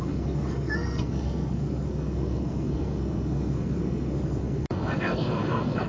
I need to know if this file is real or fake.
fake